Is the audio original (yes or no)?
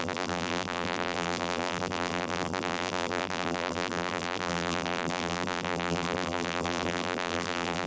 no